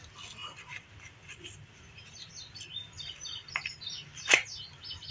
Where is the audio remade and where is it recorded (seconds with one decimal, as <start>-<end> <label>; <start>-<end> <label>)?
0.0-0.4 recorded; 0.4-3.5 remade; 3.5-5.1 recorded

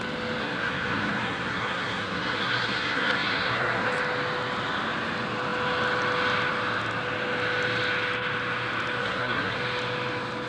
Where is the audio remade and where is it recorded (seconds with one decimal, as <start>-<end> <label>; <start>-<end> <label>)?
0.0-0.4 recorded; 0.4-3.9 remade; 3.9-9.0 recorded; 9.0-9.6 remade; 9.6-10.5 recorded

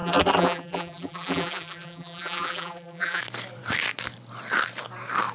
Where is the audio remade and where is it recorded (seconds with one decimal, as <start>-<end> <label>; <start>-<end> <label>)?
0.0-3.2 remade; 3.2-5.3 recorded

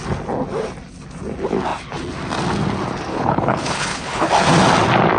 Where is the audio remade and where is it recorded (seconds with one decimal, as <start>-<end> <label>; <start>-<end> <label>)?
0.0-3.1 recorded; 3.1-4.3 remade; 4.3-5.2 recorded

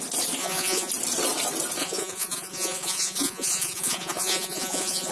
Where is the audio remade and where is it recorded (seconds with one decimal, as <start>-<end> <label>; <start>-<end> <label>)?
0.0-0.4 recorded; 0.4-0.9 remade; 0.9-1.8 recorded; 1.8-5.1 remade